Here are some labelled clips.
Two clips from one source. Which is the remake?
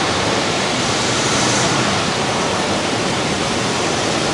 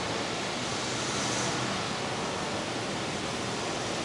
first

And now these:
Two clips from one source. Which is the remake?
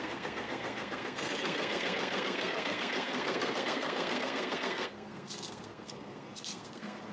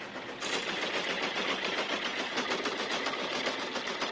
first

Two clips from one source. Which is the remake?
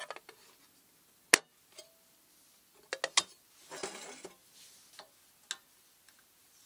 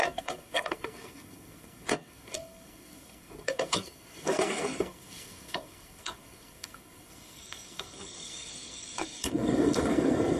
second